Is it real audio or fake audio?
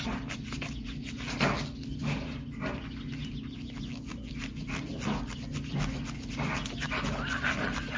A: real